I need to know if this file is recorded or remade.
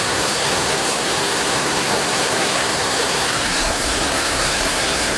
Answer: remade